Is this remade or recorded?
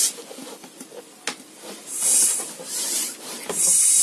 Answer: recorded